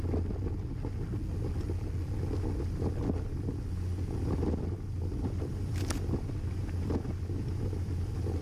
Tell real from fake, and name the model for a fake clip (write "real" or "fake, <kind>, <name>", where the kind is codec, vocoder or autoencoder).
real